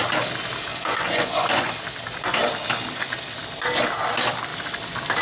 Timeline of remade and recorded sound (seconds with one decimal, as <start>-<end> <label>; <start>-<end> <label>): 0.0-0.7 recorded; 0.7-1.7 remade; 1.7-5.2 recorded